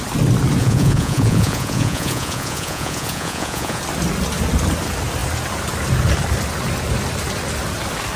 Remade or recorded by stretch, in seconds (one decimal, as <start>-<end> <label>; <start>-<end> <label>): 0.0-0.6 recorded; 0.6-3.8 remade; 3.8-8.2 recorded